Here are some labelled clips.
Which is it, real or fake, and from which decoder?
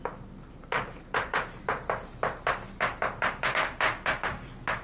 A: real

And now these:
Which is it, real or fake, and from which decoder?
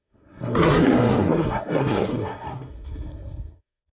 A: fake, codec, SNAC